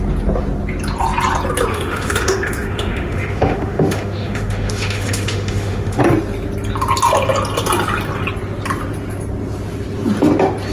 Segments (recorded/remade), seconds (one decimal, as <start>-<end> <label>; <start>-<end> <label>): 0.0-1.7 recorded; 1.7-6.0 remade; 6.0-10.7 recorded